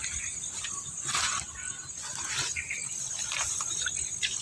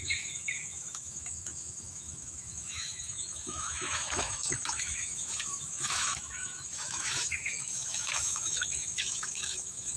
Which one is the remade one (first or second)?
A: second